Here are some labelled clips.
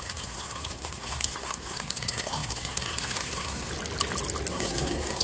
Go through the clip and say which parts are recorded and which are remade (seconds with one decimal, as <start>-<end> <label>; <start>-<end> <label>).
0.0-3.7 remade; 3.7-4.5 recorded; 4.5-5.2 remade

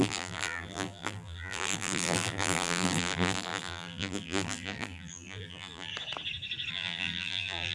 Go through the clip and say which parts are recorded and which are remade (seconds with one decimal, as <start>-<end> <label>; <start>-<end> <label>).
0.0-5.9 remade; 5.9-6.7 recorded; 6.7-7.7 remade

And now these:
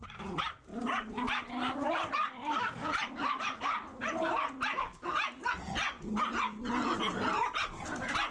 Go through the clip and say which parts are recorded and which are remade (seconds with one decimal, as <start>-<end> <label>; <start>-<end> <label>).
0.0-8.3 recorded